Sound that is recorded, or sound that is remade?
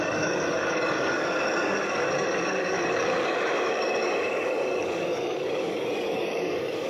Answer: remade